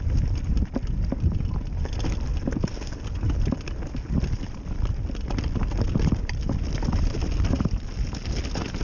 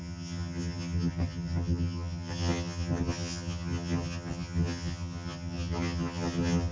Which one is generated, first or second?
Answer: second